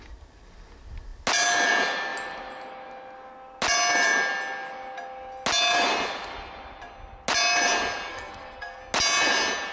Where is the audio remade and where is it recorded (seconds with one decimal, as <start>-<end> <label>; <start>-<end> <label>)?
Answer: 0.0-8.1 recorded; 8.1-8.8 remade; 8.8-9.7 recorded